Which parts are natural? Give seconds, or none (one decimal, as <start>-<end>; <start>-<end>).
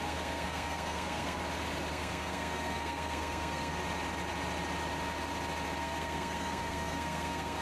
1.4-1.9; 3.7-5.8